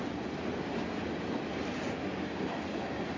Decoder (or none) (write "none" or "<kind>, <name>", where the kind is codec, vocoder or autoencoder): none